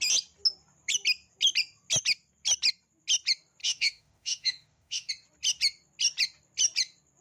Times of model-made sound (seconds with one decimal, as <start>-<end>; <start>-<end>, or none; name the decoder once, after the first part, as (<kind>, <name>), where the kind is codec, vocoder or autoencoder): 3.6-5.1 (autoencoder, DAC-VAE)